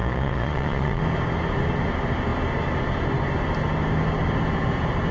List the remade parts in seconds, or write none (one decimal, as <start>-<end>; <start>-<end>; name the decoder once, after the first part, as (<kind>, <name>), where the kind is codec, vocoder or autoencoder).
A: 0.0-1.0 (vocoder, Vocos)

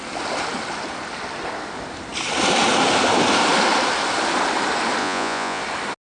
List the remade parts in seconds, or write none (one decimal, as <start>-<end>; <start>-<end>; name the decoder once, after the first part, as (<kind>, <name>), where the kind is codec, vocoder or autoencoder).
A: 5.0-5.6 (vocoder, Vocos)

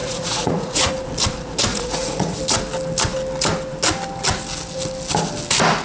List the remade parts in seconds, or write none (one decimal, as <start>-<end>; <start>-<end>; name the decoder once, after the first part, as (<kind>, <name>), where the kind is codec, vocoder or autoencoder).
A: 0.0-0.9 (vocoder, Vocos); 1.7-2.4

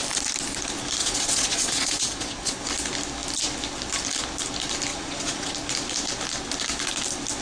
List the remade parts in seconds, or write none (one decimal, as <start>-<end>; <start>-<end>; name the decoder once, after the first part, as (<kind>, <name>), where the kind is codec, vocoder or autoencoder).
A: 1.0-2.6 (vocoder, Vocos); 4.9-5.5

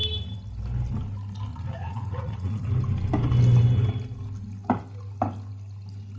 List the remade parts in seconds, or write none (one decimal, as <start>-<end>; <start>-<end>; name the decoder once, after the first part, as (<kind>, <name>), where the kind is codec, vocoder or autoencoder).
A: 1.5-2.6 (vocoder, Vocos)

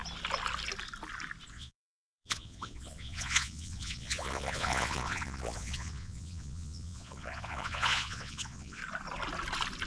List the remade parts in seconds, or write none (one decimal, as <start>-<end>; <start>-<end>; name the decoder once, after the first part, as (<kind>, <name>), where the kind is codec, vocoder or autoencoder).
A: 1.5-8.8 (vocoder, Vocos)